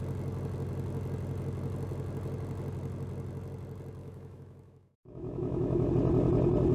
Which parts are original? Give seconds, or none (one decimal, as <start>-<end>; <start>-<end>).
0.0-4.0; 5.9-6.7